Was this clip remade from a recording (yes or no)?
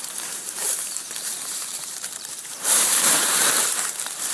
yes